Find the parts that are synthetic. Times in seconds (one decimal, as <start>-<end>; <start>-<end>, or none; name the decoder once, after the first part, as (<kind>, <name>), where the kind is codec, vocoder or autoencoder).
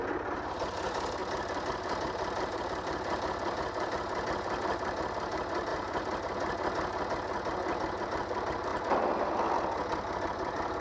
0.0-1.2 (vocoder, BigVGAN v2); 2.4-5.7; 8.0-8.7; 10.2-10.8